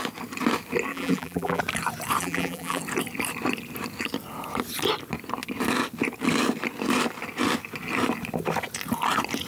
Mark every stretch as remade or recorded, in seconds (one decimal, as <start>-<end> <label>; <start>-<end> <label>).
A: 0.0-0.9 recorded; 0.9-1.6 remade; 1.6-2.2 recorded; 2.2-2.8 remade; 2.8-9.5 recorded